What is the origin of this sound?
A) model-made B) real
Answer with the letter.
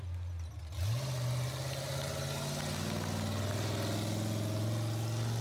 B